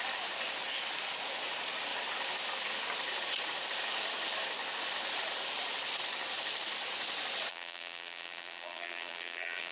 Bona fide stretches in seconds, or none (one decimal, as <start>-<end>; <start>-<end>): 0.0-7.5